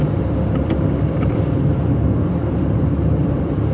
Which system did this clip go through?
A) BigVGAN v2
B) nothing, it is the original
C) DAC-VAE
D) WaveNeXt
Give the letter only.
A